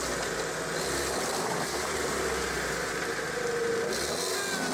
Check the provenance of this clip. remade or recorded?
recorded